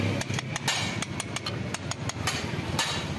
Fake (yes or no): no